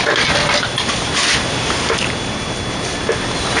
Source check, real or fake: real